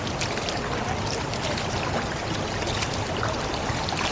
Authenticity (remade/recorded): recorded